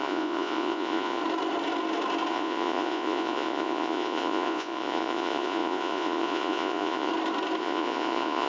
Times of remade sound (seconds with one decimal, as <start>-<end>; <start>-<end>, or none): 0.0-1.2; 2.3-7.1; 7.6-8.5